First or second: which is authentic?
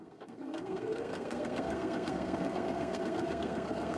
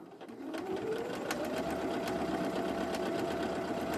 second